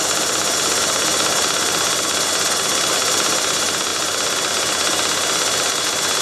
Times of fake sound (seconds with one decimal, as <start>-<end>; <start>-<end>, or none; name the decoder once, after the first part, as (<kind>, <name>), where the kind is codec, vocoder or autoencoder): none